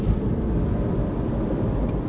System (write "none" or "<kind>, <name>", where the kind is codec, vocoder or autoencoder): none